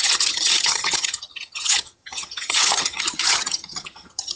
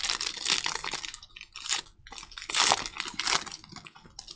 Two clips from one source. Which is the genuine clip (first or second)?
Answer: second